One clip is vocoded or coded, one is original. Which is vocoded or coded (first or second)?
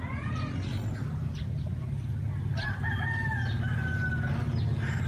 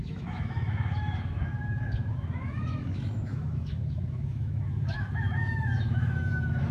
second